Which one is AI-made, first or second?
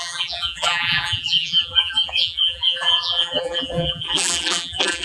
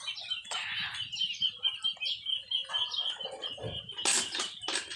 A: first